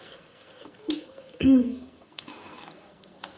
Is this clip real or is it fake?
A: fake